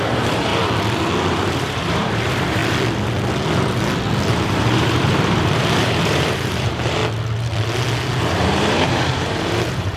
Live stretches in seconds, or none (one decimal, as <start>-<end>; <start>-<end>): 0.5-1.3; 2.6-4.3; 7.0-8.2